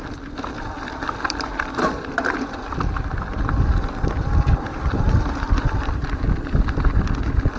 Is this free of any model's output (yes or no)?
yes